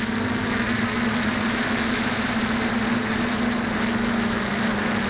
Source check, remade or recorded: recorded